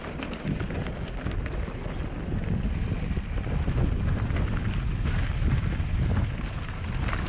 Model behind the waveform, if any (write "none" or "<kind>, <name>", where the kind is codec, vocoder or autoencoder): none